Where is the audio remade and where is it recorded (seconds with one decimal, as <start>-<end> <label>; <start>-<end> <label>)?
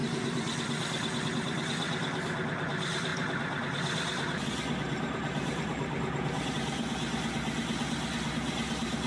0.0-3.1 recorded; 3.1-6.5 remade; 6.5-9.1 recorded